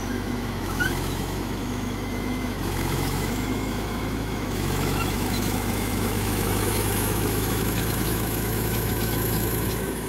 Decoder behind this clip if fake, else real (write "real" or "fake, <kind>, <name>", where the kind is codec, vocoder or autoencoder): fake, autoencoder, DAC-VAE